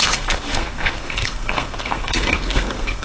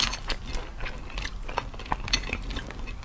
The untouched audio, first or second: second